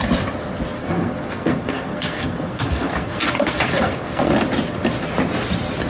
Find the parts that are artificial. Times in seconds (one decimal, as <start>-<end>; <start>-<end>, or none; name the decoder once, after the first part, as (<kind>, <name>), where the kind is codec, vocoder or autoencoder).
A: 0.8-4.3 (codec, SNAC)